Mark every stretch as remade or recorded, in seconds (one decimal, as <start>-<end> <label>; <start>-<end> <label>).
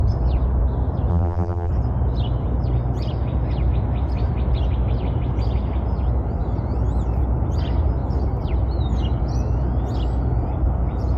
0.0-1.1 recorded; 1.1-1.7 remade; 1.7-11.2 recorded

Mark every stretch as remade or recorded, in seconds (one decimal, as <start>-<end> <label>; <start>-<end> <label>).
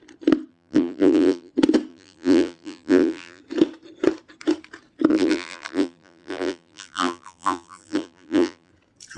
0.0-0.5 recorded; 0.5-1.5 remade; 1.5-1.9 recorded; 1.9-3.4 remade; 3.4-5.1 recorded; 5.1-8.7 remade; 8.7-9.2 recorded